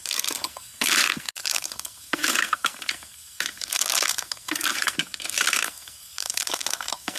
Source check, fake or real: fake